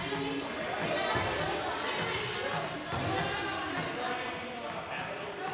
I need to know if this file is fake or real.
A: real